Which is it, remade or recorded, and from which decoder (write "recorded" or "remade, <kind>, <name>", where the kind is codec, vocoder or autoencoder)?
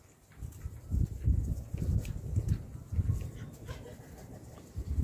recorded